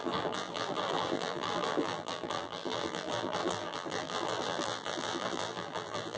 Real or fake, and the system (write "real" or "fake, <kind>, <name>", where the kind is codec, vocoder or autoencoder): fake, vocoder, BigVGAN v2